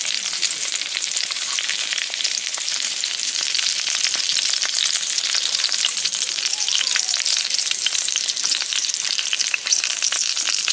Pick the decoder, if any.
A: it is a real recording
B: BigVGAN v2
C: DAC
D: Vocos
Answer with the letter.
B